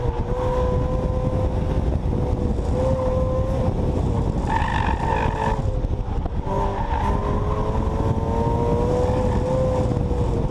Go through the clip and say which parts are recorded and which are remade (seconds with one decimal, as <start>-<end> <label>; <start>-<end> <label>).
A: 0.0-10.5 recorded